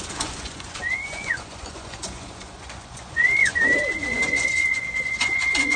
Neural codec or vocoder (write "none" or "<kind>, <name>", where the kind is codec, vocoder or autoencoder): vocoder, Vocos